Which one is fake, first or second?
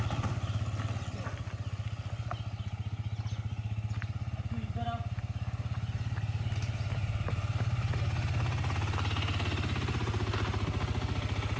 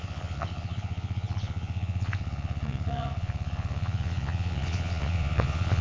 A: second